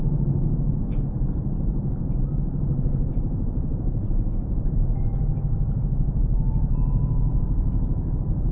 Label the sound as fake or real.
fake